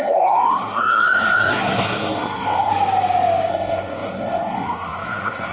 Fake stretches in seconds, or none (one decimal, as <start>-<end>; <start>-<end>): 0.0-2.7; 3.5-5.5